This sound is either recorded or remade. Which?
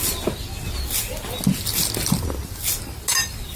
recorded